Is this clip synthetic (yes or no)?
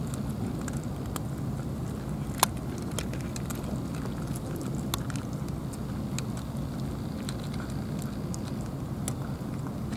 no